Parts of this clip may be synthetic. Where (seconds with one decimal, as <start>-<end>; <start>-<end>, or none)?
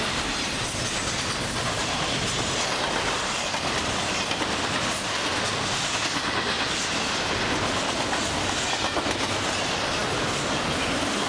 10.0-11.3